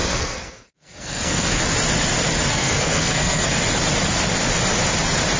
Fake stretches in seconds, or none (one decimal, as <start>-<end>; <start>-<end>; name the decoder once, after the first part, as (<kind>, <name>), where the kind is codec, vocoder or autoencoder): 0.0-1.6 (codec, SNAC); 2.5-3.6